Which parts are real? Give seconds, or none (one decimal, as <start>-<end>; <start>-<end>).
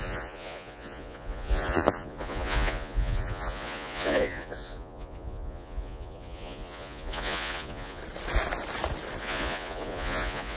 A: 8.0-9.2